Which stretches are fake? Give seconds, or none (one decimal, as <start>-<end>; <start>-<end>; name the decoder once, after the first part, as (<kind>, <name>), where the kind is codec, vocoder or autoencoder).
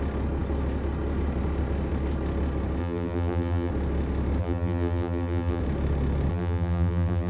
2.8-3.7 (vocoder, BigVGAN v2); 4.4-5.6; 6.3-7.3